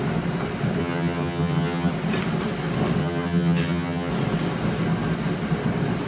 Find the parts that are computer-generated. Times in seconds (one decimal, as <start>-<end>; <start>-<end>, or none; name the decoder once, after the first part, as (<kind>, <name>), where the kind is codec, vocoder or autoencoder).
0.8-1.9 (vocoder, HiFi-GAN); 3.0-4.1